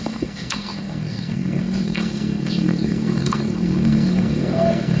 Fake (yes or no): yes